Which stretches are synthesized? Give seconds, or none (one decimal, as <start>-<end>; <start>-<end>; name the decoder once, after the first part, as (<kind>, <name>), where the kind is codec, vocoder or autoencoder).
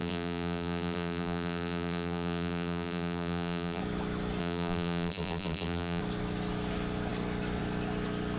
0.0-3.8 (vocoder, BigVGAN v2); 4.4-6.0